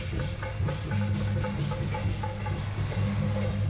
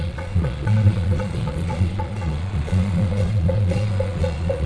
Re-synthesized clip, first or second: second